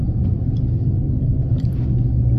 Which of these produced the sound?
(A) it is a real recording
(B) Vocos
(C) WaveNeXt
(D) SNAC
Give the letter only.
A